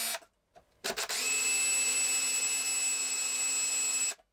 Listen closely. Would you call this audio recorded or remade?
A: recorded